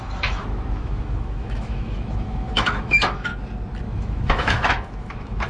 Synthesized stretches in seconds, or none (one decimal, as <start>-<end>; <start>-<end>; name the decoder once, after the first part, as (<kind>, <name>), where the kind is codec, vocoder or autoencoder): 0.0-3.3 (autoencoder, DAC-VAE); 3.8-5.5